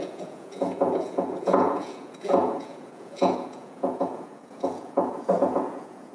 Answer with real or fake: fake